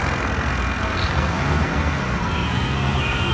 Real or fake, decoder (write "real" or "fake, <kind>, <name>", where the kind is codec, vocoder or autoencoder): fake, codec, SNAC